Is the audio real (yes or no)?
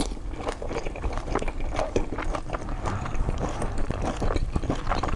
no